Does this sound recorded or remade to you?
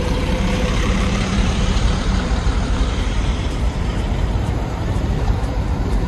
remade